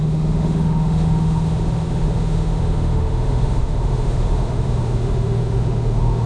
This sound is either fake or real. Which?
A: fake